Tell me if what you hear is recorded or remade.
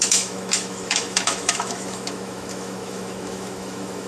remade